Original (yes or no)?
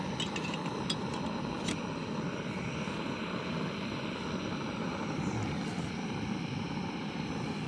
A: yes